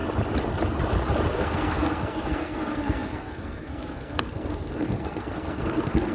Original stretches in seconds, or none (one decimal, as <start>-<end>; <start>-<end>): 0.0-1.3